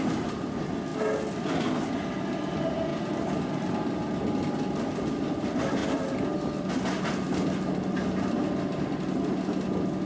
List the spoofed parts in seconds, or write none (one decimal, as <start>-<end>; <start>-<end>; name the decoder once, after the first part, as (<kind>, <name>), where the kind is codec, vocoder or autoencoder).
2.9-3.5 (vocoder, BigVGAN v2)